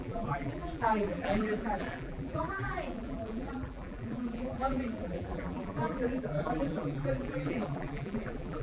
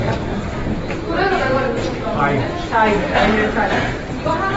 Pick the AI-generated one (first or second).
first